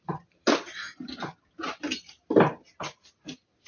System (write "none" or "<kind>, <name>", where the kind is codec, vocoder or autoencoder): none